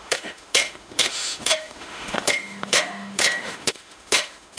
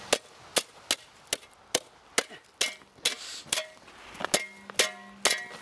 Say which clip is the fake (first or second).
first